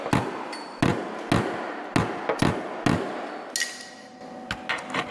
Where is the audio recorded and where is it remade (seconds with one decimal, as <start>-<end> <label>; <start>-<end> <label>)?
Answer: 0.0-5.1 recorded